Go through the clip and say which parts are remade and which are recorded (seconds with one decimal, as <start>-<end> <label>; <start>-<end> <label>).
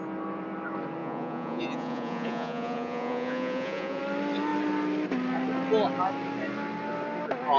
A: 0.0-1.0 recorded; 1.0-4.0 remade; 4.0-7.6 recorded